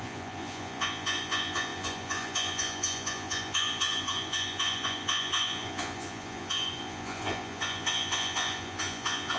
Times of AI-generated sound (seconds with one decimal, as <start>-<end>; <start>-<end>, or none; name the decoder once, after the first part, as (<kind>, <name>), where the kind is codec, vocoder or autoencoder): 0.0-9.4 (vocoder, Vocos)